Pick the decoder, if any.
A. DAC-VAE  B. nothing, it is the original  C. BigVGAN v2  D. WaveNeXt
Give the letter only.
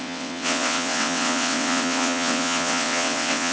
D